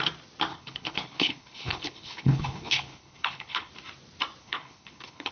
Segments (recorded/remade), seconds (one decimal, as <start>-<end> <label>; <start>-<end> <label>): 0.0-0.5 recorded; 0.5-3.7 remade; 3.7-4.4 recorded; 4.4-5.3 remade